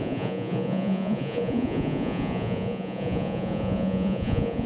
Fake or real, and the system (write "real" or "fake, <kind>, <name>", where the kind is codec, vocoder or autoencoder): fake, vocoder, Vocos